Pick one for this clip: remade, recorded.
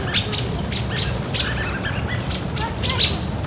recorded